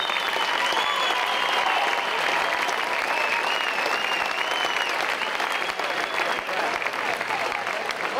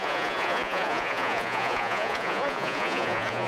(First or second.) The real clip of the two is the first